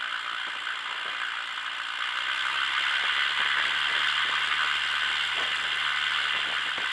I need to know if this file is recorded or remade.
recorded